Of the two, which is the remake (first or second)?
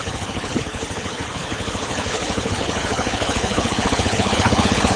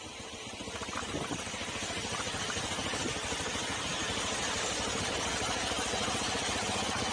first